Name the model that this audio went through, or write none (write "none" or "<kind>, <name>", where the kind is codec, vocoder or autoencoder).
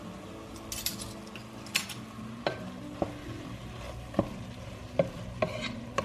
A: none